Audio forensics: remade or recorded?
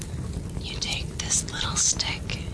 recorded